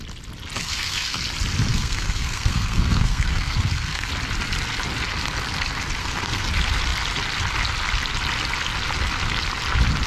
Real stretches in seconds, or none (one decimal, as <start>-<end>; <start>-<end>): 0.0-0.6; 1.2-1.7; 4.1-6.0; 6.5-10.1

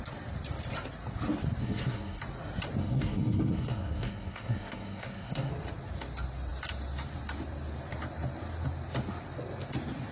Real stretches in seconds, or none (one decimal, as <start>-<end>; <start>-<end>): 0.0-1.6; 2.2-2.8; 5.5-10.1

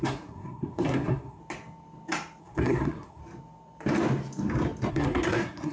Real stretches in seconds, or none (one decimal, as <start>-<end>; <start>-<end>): 1.4-2.4; 3.2-4.9

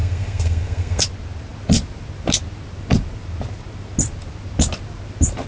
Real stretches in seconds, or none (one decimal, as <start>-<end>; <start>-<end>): 1.0-5.5